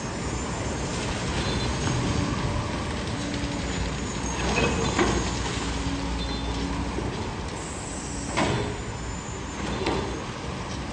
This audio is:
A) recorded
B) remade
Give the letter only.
A